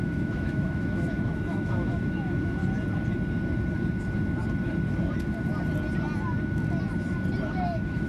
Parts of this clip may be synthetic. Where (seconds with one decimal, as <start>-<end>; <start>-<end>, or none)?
0.0-2.6; 7.5-8.1